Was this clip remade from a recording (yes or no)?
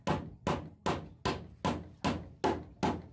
no